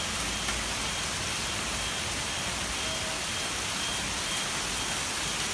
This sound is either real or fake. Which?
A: real